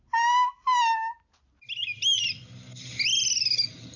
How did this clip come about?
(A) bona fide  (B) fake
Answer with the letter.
A